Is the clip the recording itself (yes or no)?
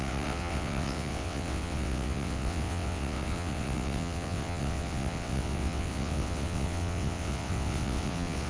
no